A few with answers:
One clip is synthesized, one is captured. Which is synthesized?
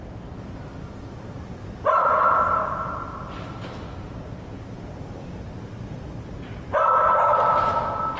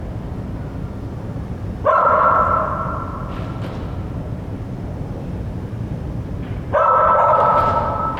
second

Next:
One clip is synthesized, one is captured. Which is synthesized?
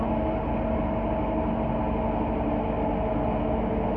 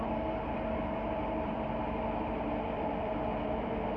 second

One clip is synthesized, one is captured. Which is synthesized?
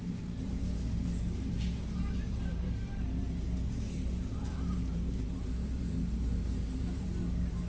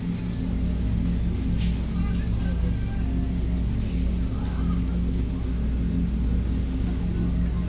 first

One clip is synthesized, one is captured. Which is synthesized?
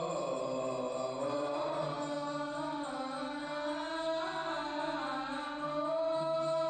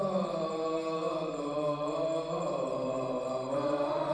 second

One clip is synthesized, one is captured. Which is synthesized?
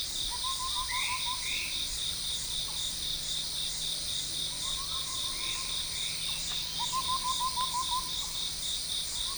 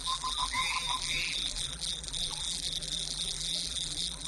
second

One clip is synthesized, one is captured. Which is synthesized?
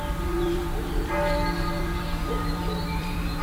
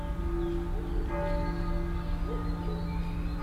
first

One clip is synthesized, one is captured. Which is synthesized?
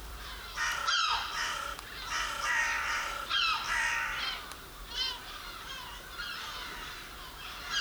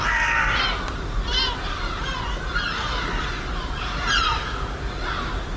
first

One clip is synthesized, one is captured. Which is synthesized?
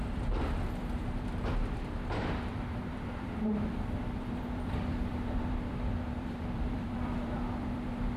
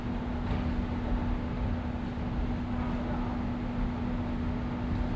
first